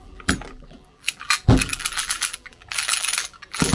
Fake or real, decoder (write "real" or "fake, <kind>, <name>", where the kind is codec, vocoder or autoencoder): fake, vocoder, BigVGAN v2